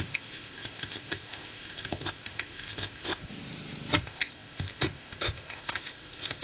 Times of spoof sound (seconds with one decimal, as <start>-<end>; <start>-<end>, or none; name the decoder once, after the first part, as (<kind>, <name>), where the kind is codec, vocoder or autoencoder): 0.0-3.3 (codec, ZipCodec); 4.0-6.4